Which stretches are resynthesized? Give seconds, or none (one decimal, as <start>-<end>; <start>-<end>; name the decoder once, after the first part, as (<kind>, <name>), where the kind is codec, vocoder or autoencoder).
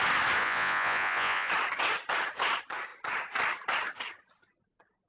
0.4-1.5 (vocoder, Vocos)